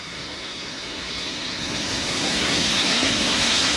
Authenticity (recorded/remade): remade